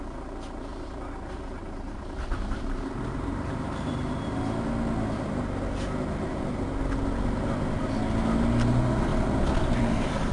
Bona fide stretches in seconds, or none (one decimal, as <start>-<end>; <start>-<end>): 0.0-0.7; 4.4-10.3